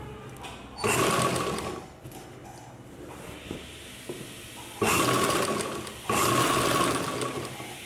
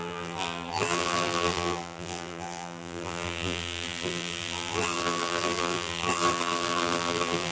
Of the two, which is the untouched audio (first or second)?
first